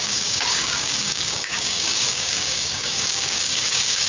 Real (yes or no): no